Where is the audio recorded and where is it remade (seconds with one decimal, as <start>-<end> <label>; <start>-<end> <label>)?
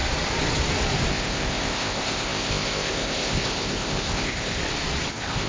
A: 0.0-1.1 recorded; 1.1-4.6 remade; 4.6-5.1 recorded; 5.1-5.5 remade